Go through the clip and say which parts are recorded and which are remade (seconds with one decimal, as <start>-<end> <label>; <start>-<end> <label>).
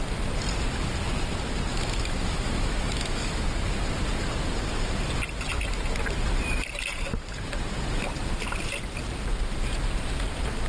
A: 0.0-1.7 recorded; 1.7-3.5 remade; 3.5-10.7 recorded